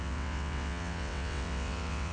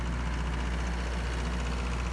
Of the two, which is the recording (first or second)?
second